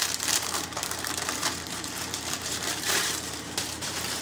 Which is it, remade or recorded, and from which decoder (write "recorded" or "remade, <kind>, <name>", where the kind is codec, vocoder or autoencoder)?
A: remade, vocoder, BigVGAN v2